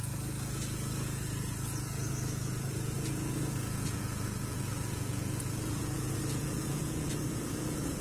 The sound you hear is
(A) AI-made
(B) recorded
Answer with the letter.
A